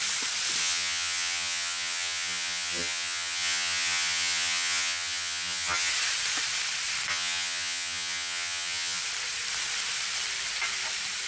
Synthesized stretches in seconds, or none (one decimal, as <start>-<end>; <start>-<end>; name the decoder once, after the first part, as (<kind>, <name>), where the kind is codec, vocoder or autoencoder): 0.6-5.9 (vocoder, HiFi-GAN); 7.1-9.0